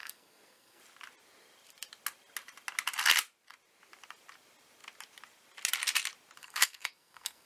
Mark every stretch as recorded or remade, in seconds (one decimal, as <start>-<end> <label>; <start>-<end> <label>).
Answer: 0.0-0.8 remade; 0.8-6.4 recorded; 6.4-7.5 remade